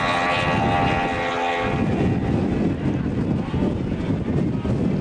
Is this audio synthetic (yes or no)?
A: no